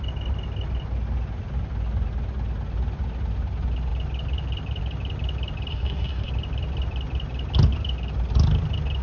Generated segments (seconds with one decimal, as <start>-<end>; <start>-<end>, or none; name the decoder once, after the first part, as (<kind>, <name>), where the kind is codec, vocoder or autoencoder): 5.7-6.3 (codec, SNAC)